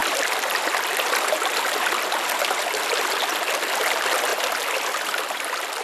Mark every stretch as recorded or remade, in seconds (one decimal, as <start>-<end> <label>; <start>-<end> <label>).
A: 0.0-5.8 recorded